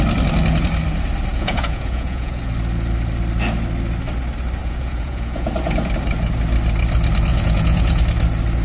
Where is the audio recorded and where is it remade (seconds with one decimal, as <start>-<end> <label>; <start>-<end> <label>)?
0.0-1.3 recorded; 1.3-2.4 remade; 2.4-4.6 recorded; 4.6-5.5 remade; 5.5-7.3 recorded; 7.3-8.0 remade; 8.0-8.6 recorded